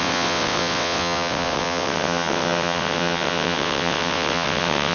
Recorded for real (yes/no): no